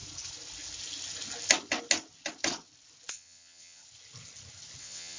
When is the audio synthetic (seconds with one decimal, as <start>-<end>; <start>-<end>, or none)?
3.1-3.8; 4.8-5.2